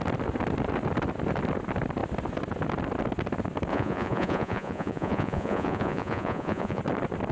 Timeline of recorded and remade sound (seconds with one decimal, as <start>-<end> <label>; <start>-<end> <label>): 0.0-3.7 recorded; 3.7-6.8 remade; 6.8-7.3 recorded